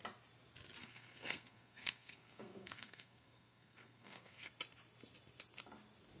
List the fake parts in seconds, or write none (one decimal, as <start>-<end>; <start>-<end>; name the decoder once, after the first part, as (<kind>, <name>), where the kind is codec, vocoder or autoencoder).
0.8-4.5 (codec, SNAC)